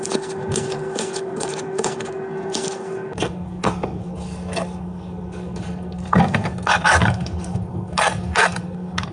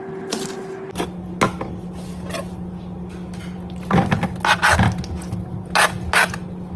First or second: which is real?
second